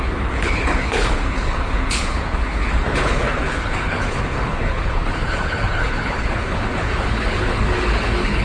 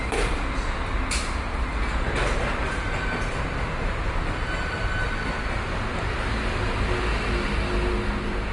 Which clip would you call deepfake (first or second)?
first